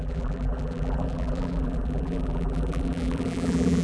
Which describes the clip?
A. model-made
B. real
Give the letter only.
A